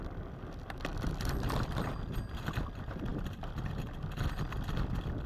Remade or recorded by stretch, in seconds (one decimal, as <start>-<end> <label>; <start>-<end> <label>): 0.0-3.1 recorded; 3.1-4.2 remade; 4.2-5.3 recorded